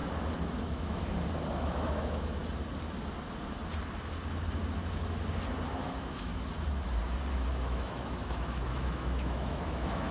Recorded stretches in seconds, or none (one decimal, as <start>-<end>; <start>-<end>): 0.0-0.6; 1.0-1.5; 2.4-5.7; 6.3-7.5